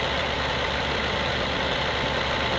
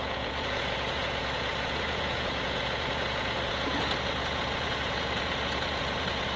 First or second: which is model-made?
second